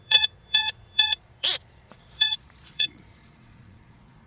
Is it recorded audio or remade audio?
remade